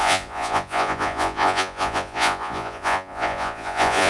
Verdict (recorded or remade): remade